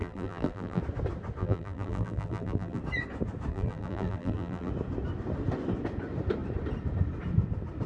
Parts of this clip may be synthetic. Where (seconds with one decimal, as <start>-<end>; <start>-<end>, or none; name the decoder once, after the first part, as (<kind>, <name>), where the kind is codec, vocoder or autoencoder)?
0.0-0.8 (vocoder, BigVGAN v2); 1.4-2.8; 3.5-4.7